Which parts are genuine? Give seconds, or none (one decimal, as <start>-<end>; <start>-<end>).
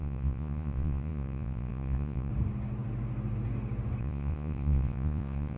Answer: 2.3-4.0